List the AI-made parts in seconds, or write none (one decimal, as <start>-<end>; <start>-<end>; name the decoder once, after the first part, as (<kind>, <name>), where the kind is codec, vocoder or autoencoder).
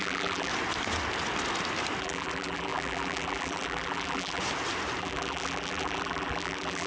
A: 0.0-0.5 (vocoder, BigVGAN v2); 2.0-4.4; 5.0-6.9